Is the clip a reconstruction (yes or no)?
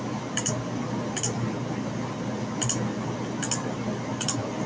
no